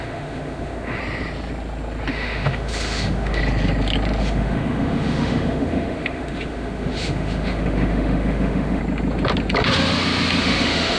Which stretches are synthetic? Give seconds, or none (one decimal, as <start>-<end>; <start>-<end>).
0.0-1.0; 2.1-3.4; 4.2-8.8; 10.4-11.0

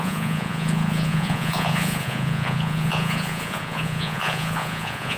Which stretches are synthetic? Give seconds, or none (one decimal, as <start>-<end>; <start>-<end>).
0.0-5.2

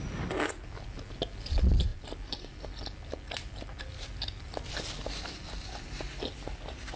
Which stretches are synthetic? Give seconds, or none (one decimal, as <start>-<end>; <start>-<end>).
none

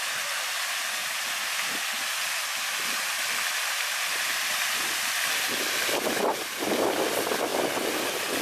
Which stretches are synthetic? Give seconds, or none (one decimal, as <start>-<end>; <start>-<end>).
none